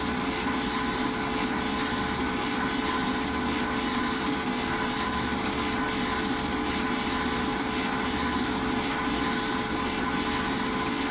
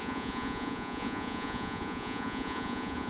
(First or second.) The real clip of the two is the first